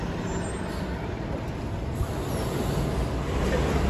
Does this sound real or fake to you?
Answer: real